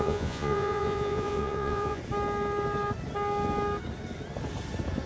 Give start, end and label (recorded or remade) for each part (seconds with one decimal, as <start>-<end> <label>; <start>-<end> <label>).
0.0-2.0 remade; 2.0-5.1 recorded